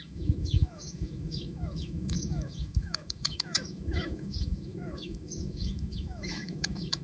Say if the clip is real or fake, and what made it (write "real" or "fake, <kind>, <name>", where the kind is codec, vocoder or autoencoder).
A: fake, autoencoder, DAC-VAE